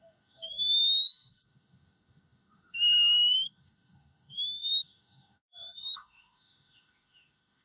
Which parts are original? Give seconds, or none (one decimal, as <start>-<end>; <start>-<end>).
none